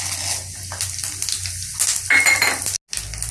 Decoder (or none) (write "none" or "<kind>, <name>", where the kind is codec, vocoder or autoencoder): none